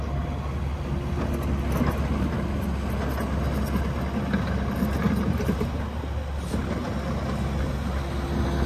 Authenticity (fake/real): real